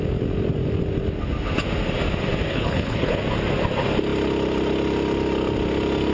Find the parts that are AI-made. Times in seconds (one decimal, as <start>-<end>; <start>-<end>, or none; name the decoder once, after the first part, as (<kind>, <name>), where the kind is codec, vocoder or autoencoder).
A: 2.5-3.2 (codec, HILCodec)